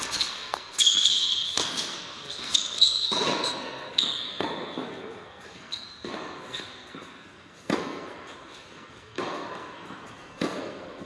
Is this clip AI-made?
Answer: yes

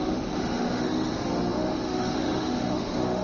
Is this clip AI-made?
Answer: yes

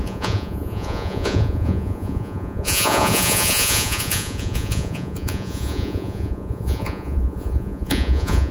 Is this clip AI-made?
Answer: yes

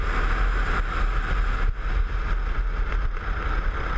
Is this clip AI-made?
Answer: no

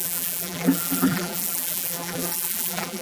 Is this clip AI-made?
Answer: yes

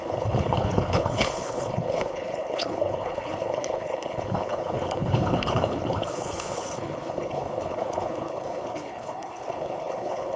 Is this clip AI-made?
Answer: yes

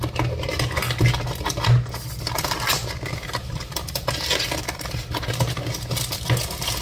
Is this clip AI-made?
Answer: no